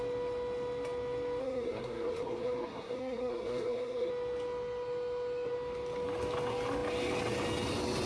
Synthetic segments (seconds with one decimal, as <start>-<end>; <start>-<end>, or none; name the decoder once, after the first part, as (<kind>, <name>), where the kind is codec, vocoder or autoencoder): 1.4-4.1 (codec, SNAC)